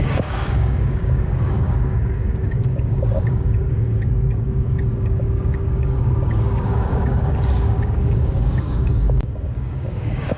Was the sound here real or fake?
fake